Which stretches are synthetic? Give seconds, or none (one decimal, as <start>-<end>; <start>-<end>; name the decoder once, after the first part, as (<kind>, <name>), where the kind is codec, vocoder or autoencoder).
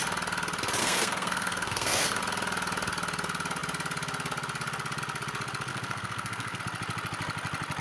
0.8-2.2 (codec, SNAC); 5.7-6.6